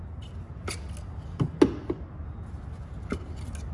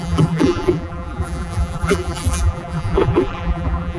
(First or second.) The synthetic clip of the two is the second